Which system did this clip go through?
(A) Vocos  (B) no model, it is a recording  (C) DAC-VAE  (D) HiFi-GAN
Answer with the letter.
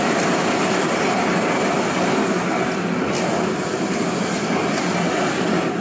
B